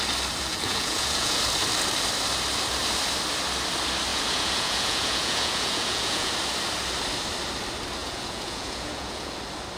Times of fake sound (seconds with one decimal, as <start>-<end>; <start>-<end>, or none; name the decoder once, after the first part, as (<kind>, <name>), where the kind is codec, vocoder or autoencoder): 0.5-1.4 (vocoder, Vocos); 4.1-6.3; 8.0-9.3